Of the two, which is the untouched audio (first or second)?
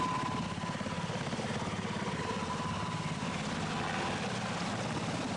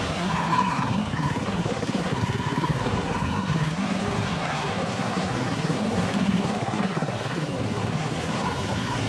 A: first